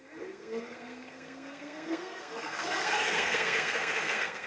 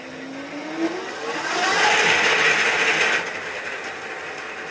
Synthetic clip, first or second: first